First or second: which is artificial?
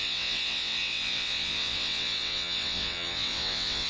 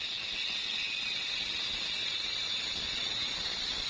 first